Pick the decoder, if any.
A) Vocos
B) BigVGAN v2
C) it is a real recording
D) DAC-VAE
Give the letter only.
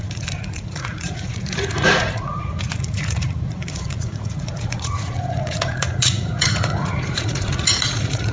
A